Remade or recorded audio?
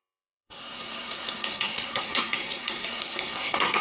remade